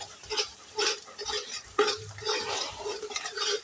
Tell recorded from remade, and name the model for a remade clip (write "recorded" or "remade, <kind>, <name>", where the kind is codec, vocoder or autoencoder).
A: remade, vocoder, BigVGAN v2